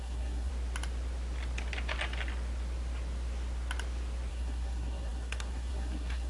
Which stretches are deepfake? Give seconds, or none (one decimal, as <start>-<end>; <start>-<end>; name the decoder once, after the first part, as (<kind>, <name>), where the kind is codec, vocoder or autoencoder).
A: 0.0-0.5 (codec, SNAC); 4.3-6.3